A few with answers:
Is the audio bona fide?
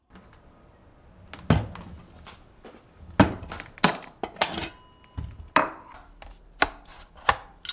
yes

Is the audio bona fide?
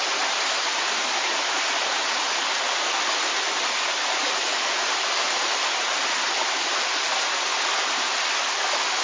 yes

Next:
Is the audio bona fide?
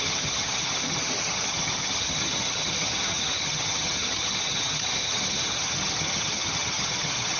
no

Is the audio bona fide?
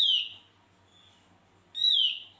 yes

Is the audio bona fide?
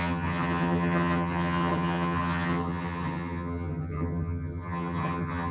no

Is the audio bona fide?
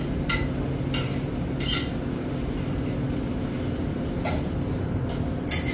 yes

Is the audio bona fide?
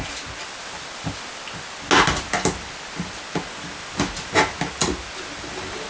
yes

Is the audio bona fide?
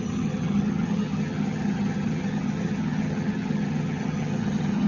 no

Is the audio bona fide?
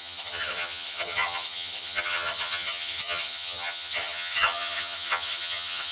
no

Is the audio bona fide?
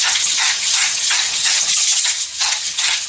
no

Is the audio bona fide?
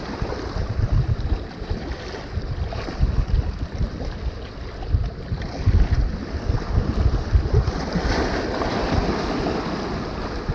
yes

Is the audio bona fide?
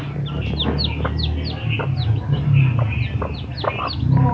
yes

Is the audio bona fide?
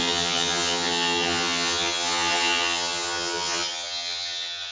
no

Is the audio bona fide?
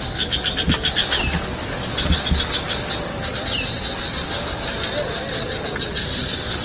yes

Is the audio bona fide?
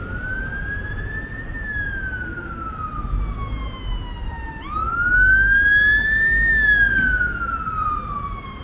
yes